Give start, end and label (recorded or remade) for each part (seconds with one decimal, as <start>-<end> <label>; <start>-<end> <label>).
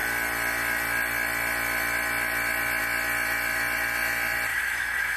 0.0-4.5 recorded; 4.5-5.2 remade